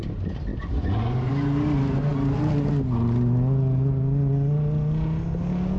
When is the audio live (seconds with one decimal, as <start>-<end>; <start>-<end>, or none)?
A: 0.0-5.8